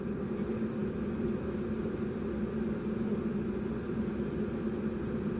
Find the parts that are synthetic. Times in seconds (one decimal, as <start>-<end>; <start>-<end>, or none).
none